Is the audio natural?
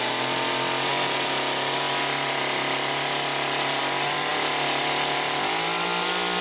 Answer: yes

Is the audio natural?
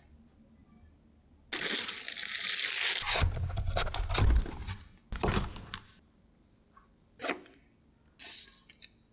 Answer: yes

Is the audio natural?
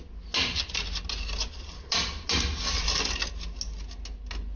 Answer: yes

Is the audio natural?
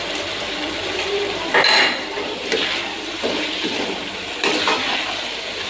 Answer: no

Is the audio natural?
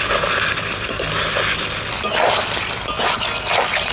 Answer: yes